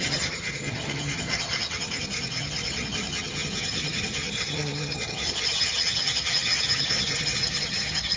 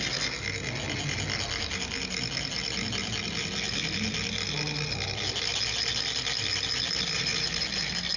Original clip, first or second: second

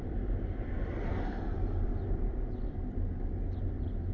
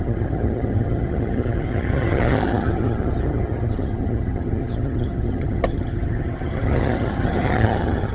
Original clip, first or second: first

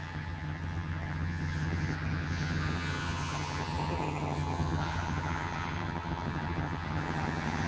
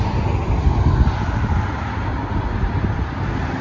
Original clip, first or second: second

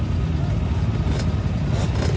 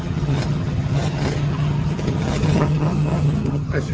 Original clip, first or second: first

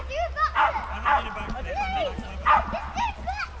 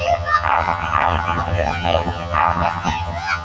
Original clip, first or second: first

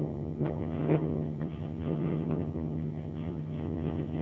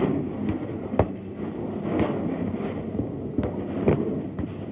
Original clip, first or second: second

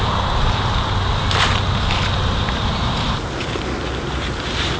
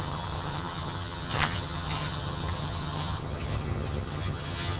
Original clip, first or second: first